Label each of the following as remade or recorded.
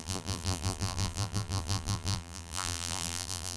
remade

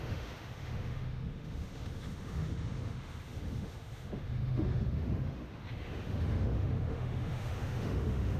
remade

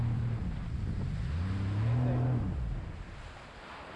recorded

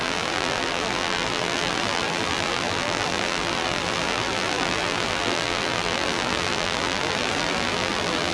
remade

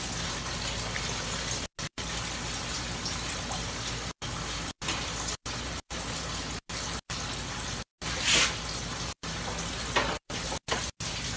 recorded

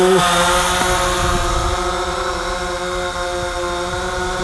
recorded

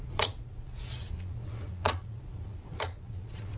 remade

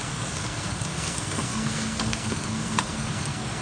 remade